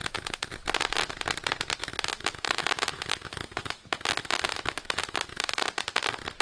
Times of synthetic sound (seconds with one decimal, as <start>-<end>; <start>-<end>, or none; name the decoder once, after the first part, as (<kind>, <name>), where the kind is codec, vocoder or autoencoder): 0.0-0.5 (autoencoder, DAC-VAE); 1.8-5.6